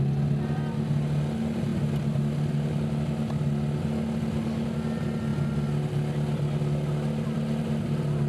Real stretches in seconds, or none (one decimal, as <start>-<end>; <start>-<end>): 0.0-8.3